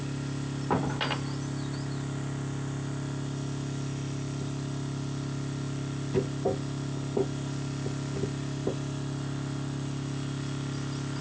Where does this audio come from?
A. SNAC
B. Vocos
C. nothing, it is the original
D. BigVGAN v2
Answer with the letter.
C